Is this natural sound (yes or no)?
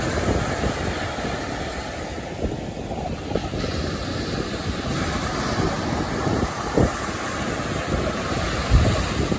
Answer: yes